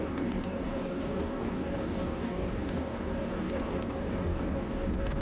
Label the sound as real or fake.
fake